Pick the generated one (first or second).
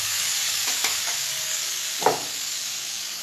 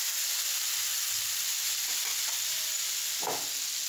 first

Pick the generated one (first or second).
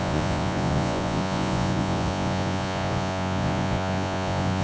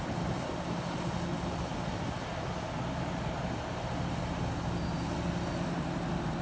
first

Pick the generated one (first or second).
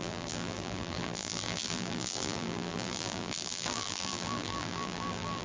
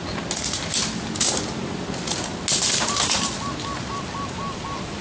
first